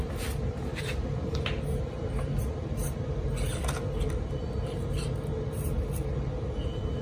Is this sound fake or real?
real